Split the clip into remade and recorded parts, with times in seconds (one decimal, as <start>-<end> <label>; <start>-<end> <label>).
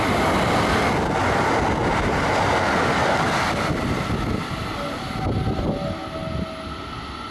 0.0-7.3 recorded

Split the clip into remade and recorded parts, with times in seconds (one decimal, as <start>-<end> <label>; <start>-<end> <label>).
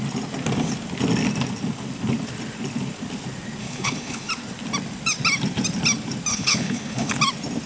0.0-3.6 recorded; 3.6-4.3 remade; 4.3-6.3 recorded; 6.3-7.1 remade; 7.1-7.7 recorded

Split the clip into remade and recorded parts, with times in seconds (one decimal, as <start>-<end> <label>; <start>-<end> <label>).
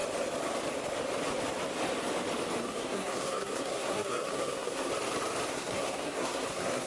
0.0-2.6 recorded; 2.6-4.9 remade; 4.9-5.5 recorded; 5.5-6.9 remade